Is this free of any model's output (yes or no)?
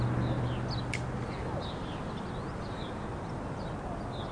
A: yes